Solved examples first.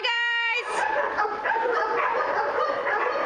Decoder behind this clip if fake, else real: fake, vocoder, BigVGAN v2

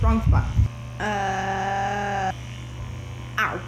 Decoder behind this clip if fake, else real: real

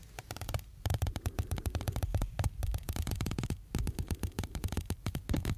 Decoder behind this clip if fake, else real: fake, vocoder, BigVGAN v2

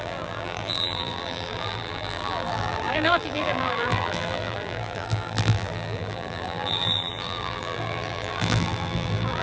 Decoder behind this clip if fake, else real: fake, vocoder, BigVGAN v2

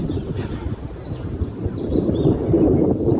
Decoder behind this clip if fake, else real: fake, vocoder, BigVGAN v2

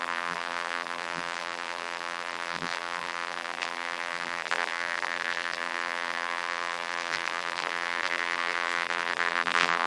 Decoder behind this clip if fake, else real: fake, vocoder, BigVGAN v2